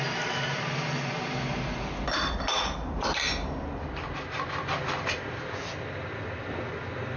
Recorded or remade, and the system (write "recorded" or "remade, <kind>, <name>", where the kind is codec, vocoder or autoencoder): remade, vocoder, BigVGAN v2